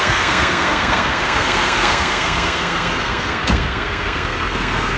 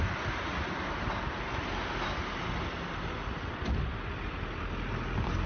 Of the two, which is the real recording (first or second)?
second